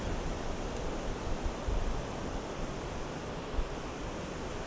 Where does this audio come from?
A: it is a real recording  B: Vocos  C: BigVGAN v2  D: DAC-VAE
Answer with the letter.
A